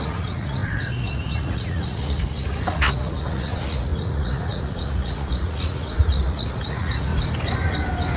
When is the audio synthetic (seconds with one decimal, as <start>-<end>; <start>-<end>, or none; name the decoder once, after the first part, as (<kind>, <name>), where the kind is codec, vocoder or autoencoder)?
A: 0.0-7.1 (vocoder, Vocos)